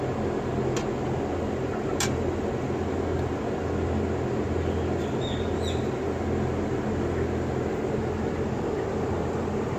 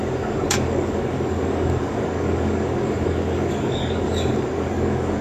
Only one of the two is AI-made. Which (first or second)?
second